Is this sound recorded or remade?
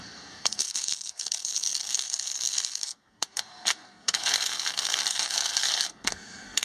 remade